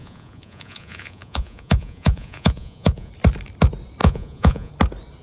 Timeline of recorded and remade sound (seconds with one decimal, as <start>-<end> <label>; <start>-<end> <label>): 0.0-3.1 remade; 3.1-4.0 recorded; 4.0-4.7 remade; 4.7-5.2 recorded